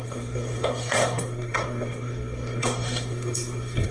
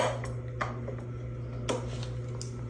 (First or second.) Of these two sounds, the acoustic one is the second